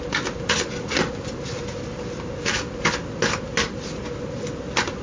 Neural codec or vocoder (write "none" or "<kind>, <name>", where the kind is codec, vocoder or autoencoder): none